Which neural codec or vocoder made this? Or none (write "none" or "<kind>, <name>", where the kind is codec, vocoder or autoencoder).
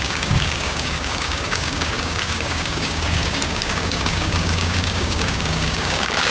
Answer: codec, DAC